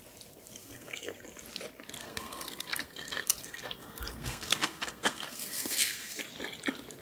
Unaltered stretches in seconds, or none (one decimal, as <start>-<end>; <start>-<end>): 0.0-0.6; 1.2-2.0; 6.2-7.0